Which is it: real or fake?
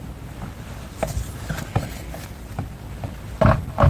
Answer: real